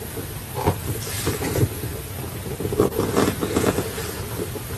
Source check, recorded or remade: recorded